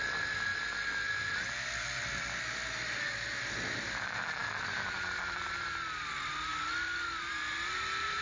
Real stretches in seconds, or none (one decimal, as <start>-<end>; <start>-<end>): 0.0-8.2